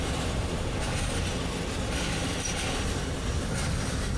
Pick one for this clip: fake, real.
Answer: real